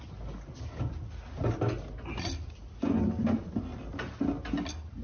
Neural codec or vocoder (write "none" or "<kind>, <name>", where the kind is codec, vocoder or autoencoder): none